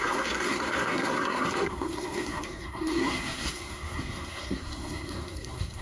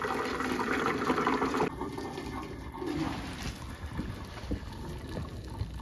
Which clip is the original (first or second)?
second